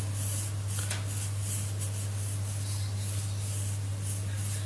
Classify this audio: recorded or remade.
recorded